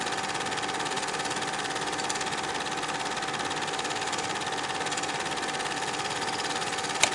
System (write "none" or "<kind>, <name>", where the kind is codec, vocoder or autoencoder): none